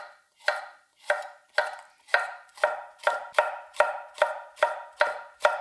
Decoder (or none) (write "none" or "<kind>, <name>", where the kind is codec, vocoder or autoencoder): none